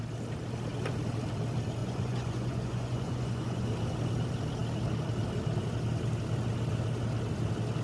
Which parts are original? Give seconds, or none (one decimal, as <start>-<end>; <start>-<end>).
0.0-1.8; 3.7-7.8